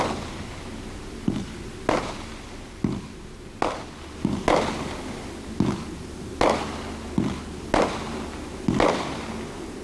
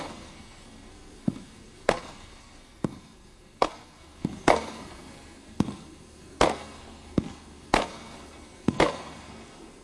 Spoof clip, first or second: second